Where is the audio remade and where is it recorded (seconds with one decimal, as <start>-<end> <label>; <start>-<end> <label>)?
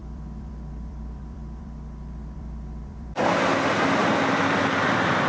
0.0-3.2 remade; 3.2-4.0 recorded; 4.0-5.3 remade